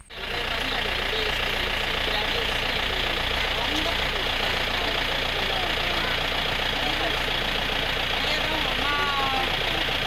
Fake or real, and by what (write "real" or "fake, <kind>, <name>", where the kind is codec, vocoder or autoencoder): real